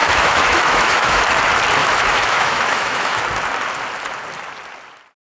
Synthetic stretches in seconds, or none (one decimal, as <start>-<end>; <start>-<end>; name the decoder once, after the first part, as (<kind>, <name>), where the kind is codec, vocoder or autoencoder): 0.0-1.2 (autoencoder, DAC-VAE); 1.8-3.2